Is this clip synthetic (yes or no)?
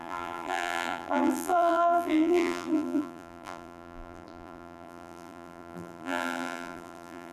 yes